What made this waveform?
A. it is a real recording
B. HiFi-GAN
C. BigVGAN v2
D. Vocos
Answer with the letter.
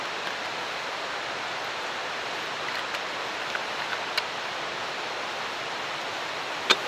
A